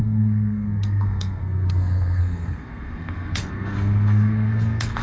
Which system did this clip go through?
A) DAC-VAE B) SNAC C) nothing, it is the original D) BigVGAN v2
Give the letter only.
B